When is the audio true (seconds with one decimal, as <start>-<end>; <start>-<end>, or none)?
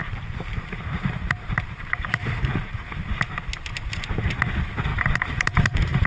3.1-4.9